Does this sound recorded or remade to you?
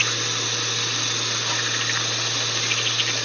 recorded